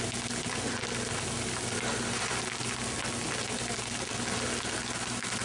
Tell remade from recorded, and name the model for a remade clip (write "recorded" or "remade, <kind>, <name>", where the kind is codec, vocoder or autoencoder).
recorded